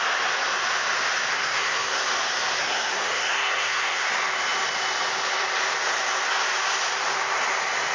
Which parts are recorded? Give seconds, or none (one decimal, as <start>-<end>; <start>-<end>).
0.0-1.3; 2.0-2.6; 4.1-7.9